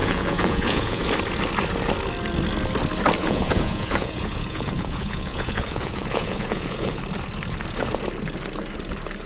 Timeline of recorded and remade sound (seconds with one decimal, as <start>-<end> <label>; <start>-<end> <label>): 0.0-1.0 remade; 1.0-3.2 recorded; 3.2-7.0 remade; 7.0-9.3 recorded